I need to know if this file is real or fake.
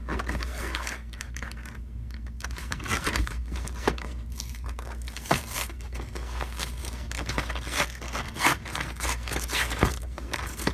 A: fake